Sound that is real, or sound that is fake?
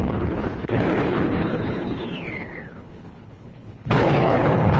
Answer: fake